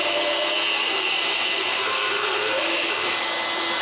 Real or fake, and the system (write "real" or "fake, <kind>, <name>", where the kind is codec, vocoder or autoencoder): real